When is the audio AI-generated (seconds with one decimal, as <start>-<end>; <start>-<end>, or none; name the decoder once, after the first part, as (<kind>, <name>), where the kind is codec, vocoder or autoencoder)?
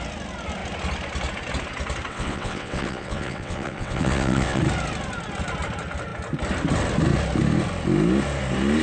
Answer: 2.1-4.6 (vocoder, WaveNeXt)